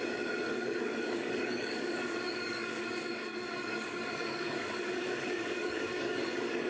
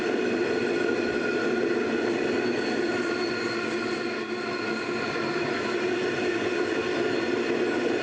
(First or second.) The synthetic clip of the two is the first